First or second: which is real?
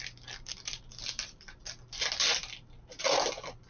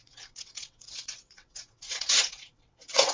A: first